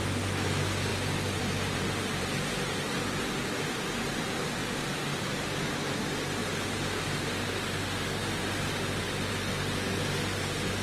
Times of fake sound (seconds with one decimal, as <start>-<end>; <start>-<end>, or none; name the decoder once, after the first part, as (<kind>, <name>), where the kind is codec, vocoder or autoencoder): none